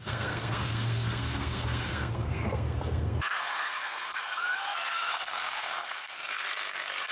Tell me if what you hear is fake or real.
fake